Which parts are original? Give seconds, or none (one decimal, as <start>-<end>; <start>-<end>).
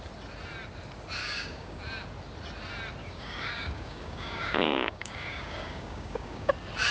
0.0-1.2; 1.8-3.0; 6.5-6.9